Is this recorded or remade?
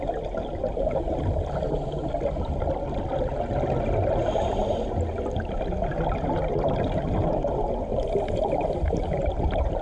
recorded